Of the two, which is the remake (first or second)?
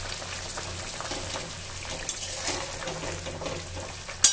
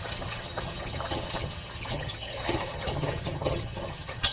second